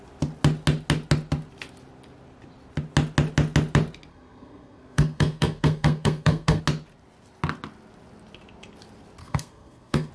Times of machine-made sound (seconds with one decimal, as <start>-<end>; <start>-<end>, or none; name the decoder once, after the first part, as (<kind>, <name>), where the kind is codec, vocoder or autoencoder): 4.1-6.6 (codec, SNAC); 9.2-10.1